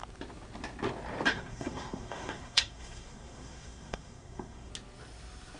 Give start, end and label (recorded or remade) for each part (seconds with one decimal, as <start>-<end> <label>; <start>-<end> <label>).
0.0-1.3 recorded; 1.3-4.7 remade; 4.7-5.6 recorded